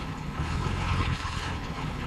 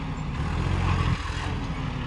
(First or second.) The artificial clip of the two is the first